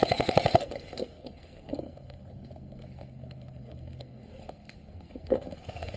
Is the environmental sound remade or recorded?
remade